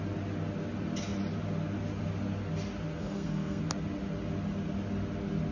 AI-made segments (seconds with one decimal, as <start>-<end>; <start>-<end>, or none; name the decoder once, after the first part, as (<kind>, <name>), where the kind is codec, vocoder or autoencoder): 3.0-3.6 (codec, SNAC)